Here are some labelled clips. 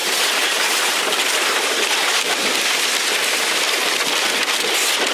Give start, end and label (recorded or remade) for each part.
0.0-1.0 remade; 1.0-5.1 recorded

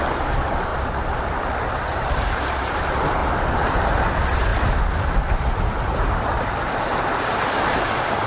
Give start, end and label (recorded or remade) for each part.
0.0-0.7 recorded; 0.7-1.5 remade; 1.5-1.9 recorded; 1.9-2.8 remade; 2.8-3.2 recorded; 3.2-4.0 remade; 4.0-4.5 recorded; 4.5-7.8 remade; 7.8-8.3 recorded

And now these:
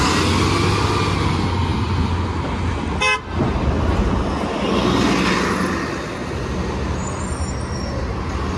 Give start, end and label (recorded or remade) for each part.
0.0-8.6 recorded

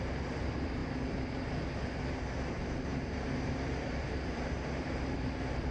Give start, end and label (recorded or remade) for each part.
0.0-0.8 remade; 0.8-1.9 recorded; 1.9-5.7 remade

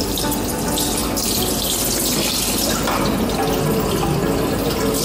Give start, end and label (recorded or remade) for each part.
0.0-5.0 recorded

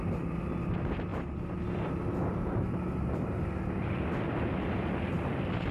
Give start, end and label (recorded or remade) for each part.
0.0-5.7 recorded

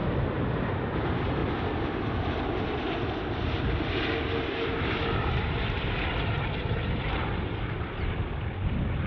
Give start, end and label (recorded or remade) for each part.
0.0-0.7 remade; 0.7-9.1 recorded